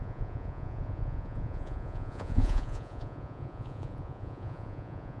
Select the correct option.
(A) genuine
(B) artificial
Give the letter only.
B